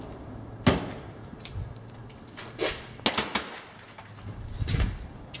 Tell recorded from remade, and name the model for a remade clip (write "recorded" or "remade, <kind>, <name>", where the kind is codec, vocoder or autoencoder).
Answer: recorded